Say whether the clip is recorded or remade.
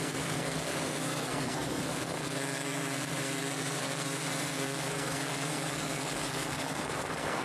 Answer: remade